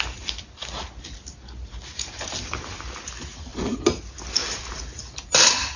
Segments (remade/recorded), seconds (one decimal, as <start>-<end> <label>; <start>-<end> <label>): 0.0-3.3 recorded; 3.3-3.8 remade; 3.8-4.4 recorded; 4.4-5.0 remade; 5.0-5.8 recorded